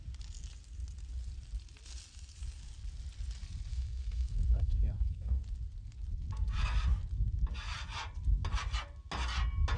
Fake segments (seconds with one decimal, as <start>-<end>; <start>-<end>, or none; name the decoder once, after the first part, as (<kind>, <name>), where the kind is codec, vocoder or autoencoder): 3.7-5.4 (codec, SNAC)